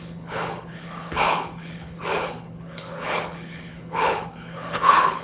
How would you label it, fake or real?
fake